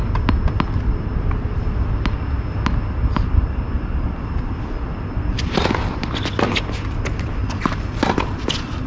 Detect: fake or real real